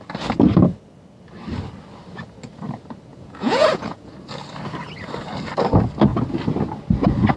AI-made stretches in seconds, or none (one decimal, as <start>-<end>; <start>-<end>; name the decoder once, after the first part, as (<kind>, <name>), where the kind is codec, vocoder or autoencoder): 3.1-4.1 (vocoder, Vocos)

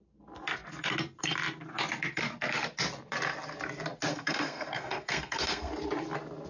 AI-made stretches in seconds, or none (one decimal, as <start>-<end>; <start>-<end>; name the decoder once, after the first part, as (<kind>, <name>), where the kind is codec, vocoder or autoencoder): 4.1-5.7 (codec, SNAC)

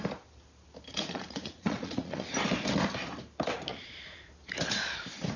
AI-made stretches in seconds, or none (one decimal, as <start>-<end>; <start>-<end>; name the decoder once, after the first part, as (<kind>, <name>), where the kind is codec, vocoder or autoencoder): 0.9-2.3 (vocoder, Vocos); 3.7-4.3

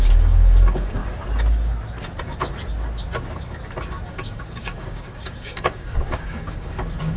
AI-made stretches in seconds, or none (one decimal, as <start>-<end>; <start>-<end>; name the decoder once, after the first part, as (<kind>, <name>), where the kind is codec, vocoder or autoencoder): 0.0-1.0 (codec, DAC); 4.1-7.2